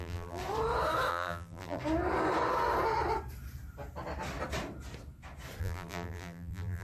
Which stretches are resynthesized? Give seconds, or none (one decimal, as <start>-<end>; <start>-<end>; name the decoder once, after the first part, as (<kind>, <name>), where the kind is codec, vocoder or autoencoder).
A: 0.0-0.4 (vocoder, BigVGAN v2); 1.1-1.8; 5.6-6.8